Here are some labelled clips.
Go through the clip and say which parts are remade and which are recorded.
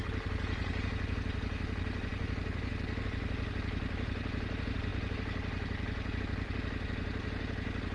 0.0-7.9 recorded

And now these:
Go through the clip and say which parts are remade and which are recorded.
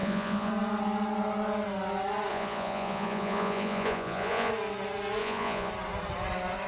0.0-0.5 remade; 0.5-2.3 recorded; 2.3-4.5 remade; 4.5-5.2 recorded; 5.2-5.7 remade; 5.7-6.7 recorded